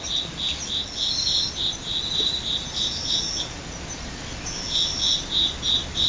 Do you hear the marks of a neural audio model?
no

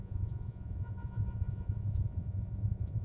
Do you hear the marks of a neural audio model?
yes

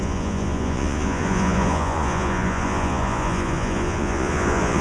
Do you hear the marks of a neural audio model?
yes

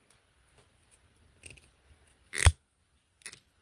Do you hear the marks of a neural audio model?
no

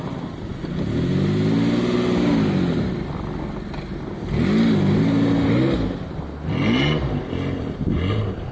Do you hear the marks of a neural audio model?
no